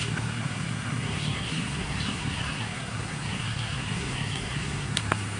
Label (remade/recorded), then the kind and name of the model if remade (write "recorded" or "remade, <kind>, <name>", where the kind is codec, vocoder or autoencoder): remade, codec, SNAC